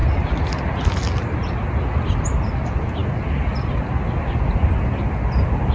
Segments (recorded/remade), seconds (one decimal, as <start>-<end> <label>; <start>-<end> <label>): 0.0-5.7 recorded